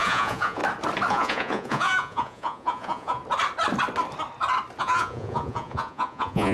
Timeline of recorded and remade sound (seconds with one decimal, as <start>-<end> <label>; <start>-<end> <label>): 0.0-0.6 remade; 0.6-1.1 recorded; 1.1-3.2 remade; 3.2-4.8 recorded; 4.8-6.5 remade